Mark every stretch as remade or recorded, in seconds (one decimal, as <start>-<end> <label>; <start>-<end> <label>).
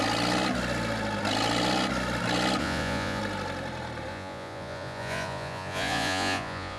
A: 0.0-2.6 recorded; 2.6-3.2 remade; 3.2-4.1 recorded; 4.1-6.8 remade